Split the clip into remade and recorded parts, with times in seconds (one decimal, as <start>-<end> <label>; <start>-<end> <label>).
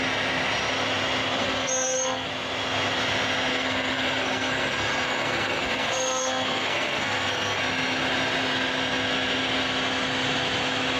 0.0-1.4 recorded; 1.4-2.3 remade; 2.3-3.5 recorded; 3.5-7.6 remade; 7.6-11.0 recorded